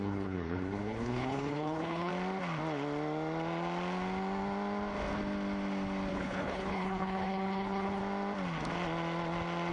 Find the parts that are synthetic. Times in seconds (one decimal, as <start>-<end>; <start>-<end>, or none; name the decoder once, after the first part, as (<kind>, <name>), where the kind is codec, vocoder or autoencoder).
0.0-2.1 (codec, HILCodec); 6.1-8.0